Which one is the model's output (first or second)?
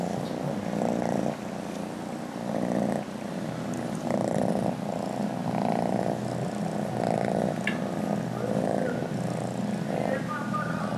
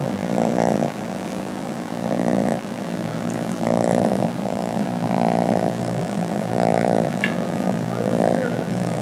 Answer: second